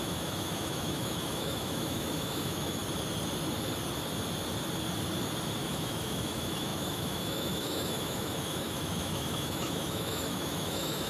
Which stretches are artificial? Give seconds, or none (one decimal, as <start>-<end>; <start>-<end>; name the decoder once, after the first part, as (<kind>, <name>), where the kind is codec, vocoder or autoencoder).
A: 0.0-2.8 (autoencoder, DAC-VAE); 5.7-11.1